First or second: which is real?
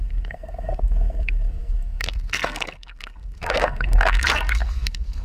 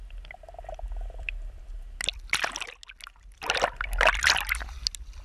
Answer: second